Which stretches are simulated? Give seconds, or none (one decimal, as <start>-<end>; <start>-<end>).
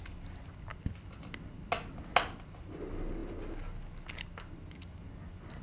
none